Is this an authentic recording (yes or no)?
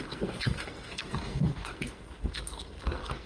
no